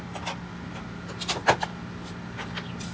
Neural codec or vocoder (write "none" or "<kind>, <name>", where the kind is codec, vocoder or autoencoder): none